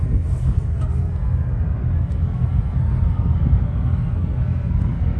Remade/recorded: remade